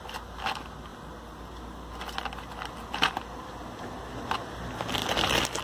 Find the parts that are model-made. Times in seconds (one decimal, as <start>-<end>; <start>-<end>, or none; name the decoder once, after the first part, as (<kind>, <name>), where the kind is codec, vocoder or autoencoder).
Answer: none